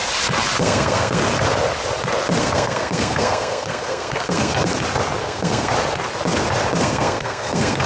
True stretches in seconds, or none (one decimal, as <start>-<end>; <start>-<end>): 0.0-0.6; 1.2-2.4; 4.7-5.2; 5.7-6.8

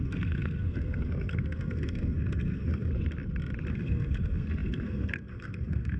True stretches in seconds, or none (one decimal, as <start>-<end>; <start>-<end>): 2.9-3.7

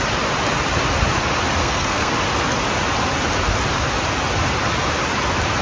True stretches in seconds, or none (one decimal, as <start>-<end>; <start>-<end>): 0.0-1.6; 2.1-5.6

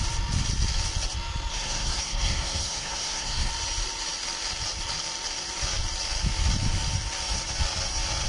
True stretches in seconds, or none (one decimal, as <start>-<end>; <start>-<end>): 0.0-1.5; 3.5-8.3

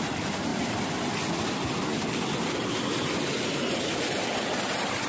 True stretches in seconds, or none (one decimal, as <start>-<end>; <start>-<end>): 0.0-5.1

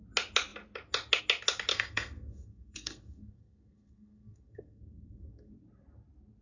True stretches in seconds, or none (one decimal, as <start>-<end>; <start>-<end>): 0.0-1.7; 5.5-6.4

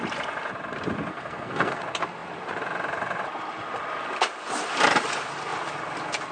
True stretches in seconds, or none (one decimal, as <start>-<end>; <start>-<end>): 0.0-1.1; 1.8-6.3